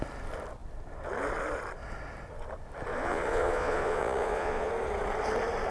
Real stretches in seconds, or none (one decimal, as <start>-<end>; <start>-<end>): 0.0-2.9; 4.7-5.7